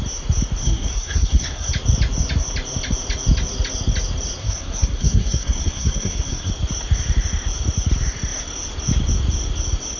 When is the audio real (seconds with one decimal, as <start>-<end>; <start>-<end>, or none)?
0.0-0.6; 1.7-4.4; 6.5-10.0